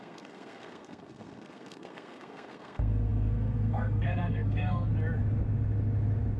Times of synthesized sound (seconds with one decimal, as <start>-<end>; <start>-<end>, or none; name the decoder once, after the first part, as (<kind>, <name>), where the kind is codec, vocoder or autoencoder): 0.0-4.9 (codec, SNAC)